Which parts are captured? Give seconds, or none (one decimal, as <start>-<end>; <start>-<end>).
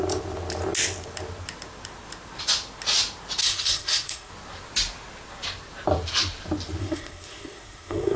0.0-3.4; 4.3-6.8